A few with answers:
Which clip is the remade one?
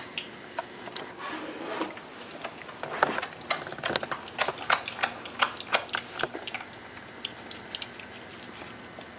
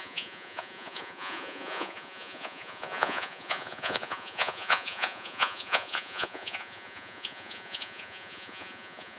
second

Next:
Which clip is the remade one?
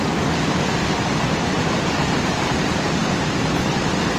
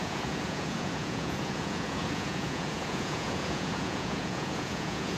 second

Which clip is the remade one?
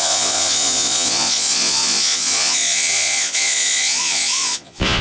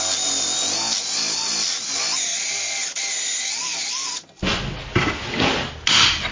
first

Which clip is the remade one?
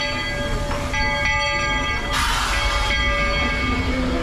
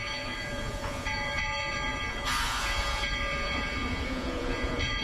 second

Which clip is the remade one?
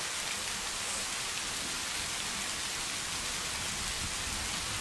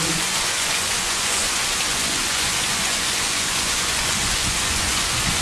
second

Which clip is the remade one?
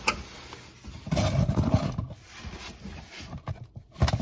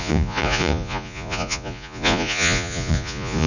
second